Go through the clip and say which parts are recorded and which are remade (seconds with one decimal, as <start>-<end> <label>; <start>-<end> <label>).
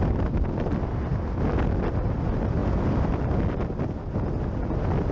0.0-5.1 recorded